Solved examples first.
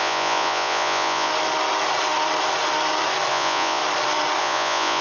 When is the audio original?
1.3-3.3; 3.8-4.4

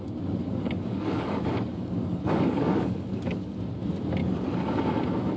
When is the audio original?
0.0-0.4; 3.6-4.2; 4.8-5.4

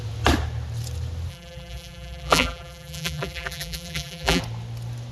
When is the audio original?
0.0-1.3; 4.4-5.1

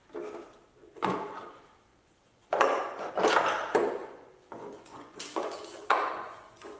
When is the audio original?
0.0-0.8; 1.5-1.9; 3.1-4.0